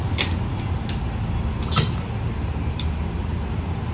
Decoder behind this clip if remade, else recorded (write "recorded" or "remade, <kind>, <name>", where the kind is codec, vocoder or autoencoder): recorded